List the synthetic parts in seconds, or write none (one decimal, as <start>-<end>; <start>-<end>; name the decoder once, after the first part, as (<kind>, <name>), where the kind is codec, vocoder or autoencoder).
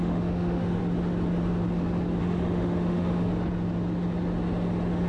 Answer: 0.0-0.8 (autoencoder, DAC-VAE); 2.2-3.3